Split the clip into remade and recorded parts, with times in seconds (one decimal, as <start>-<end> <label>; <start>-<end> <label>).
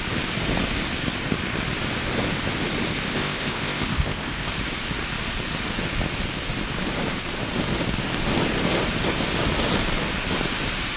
0.0-3.1 recorded; 3.1-4.5 remade; 4.5-11.0 recorded